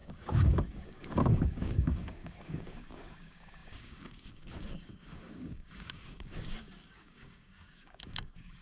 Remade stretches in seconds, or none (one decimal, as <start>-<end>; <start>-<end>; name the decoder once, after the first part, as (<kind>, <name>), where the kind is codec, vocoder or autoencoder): 0.0-8.6 (codec, DAC)